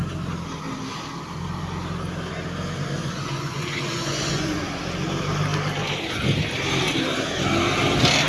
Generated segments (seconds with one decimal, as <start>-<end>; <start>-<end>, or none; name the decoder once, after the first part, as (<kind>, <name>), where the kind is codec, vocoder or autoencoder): 3.0-4.8 (vocoder, Vocos)